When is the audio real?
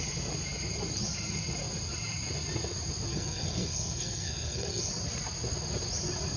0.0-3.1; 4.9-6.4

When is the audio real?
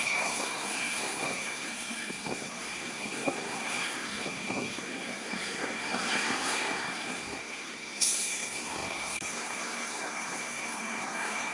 none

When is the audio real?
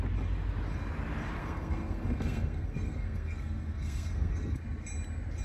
0.0-1.4; 4.6-5.4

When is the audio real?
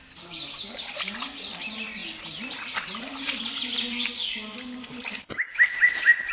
0.0-6.3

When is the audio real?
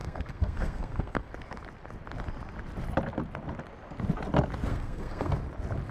1.3-4.7; 5.3-5.9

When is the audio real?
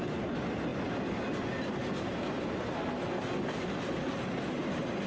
0.0-5.1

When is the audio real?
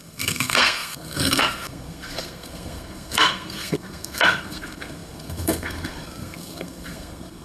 none